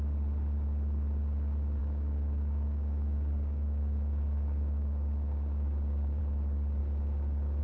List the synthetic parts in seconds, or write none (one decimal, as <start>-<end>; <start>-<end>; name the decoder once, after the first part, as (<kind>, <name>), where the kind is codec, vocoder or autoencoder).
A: 1.8-6.2 (codec, DAC)